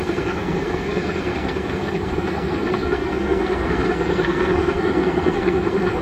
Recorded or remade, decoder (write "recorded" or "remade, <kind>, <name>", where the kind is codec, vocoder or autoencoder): remade, codec, SNAC